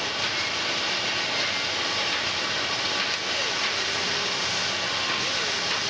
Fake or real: real